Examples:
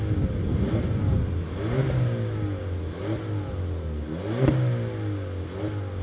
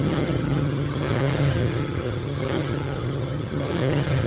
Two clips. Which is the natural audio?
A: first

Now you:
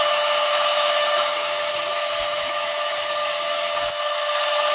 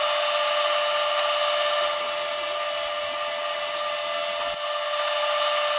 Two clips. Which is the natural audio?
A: second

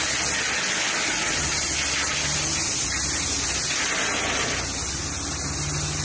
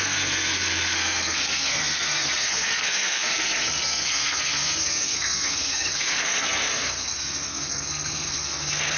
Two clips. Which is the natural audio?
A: first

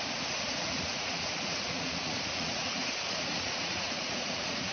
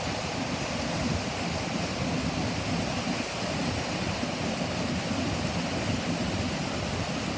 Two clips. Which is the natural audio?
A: second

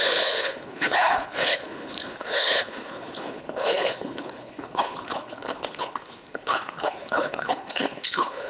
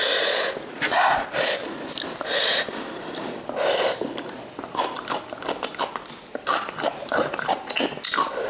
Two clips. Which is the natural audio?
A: second